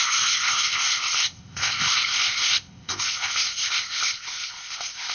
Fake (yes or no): yes